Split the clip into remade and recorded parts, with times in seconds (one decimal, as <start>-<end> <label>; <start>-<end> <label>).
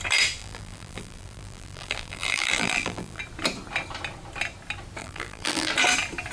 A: 0.0-0.4 recorded; 0.4-3.2 remade; 3.2-5.0 recorded; 5.0-5.7 remade; 5.7-6.3 recorded